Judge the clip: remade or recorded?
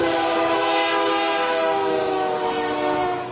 remade